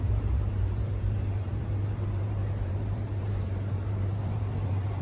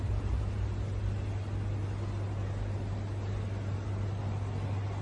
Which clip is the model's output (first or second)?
first